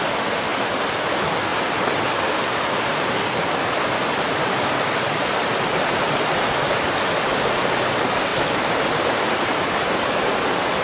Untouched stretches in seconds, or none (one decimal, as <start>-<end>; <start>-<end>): 0.0-10.8